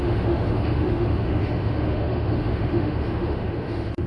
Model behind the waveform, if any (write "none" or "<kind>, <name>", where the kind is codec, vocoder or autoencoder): autoencoder, DAC-VAE